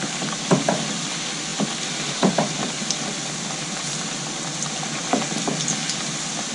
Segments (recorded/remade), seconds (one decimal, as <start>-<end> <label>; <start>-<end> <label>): 0.0-6.5 recorded